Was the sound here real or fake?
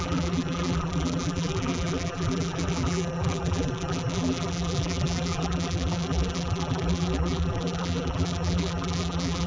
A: fake